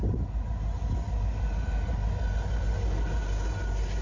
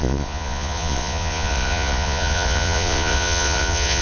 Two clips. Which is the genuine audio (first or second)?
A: first